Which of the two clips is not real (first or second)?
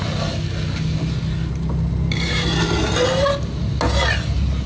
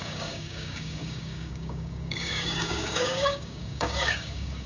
second